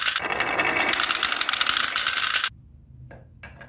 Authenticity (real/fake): real